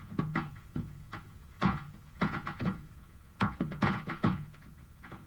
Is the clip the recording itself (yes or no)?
no